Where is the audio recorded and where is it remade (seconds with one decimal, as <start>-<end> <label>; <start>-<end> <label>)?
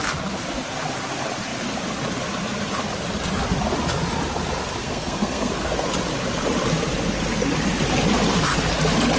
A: 0.0-4.8 recorded; 4.8-5.5 remade; 5.5-9.2 recorded